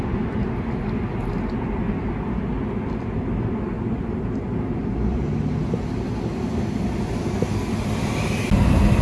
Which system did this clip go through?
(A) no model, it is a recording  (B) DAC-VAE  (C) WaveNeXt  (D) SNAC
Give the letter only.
A